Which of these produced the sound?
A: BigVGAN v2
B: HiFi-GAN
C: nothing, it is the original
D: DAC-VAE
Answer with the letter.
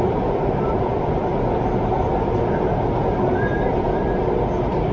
C